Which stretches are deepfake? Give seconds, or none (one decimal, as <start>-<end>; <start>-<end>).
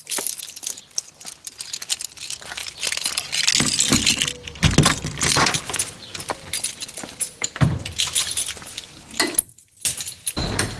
none